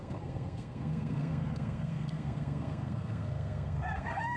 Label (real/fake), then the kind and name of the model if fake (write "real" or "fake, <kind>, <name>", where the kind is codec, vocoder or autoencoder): fake, codec, SNAC